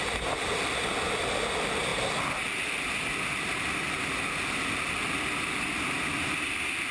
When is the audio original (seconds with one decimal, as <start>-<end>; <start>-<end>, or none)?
0.0-6.9